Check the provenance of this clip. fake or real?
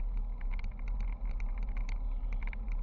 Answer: real